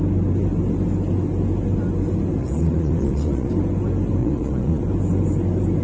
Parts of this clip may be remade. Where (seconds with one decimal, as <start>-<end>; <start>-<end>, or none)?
2.4-3.5; 4.2-4.8